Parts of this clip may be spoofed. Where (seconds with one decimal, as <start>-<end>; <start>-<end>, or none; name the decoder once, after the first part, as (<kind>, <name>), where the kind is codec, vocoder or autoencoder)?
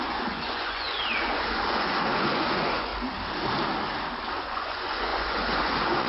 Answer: 0.0-2.9 (vocoder, Vocos); 4.4-6.1